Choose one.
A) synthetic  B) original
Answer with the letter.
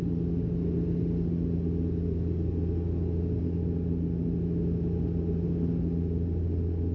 B